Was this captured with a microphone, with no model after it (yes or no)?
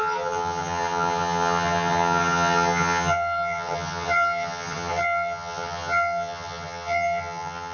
no